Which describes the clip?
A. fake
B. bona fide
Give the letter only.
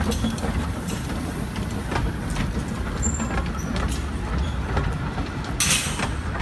B